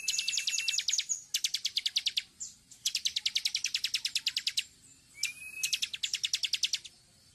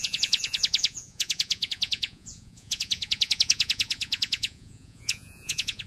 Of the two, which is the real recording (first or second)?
first